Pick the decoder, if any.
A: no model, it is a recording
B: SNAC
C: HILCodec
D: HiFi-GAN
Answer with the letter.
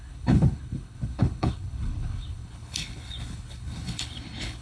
C